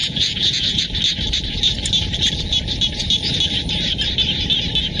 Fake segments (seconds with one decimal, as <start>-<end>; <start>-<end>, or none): 0.0-0.8